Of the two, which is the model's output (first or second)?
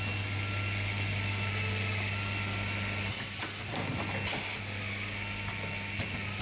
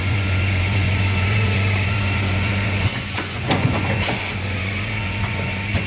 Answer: second